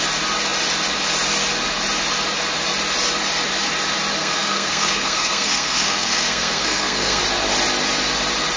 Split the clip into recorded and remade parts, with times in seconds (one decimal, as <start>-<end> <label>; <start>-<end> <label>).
0.0-4.2 recorded; 4.2-7.2 remade; 7.2-8.6 recorded